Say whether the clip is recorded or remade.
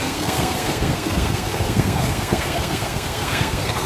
remade